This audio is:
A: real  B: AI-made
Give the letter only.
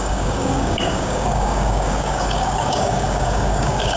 B